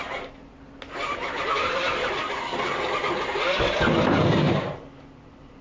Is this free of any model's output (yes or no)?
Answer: yes